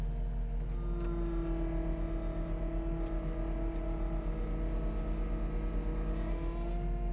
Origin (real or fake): real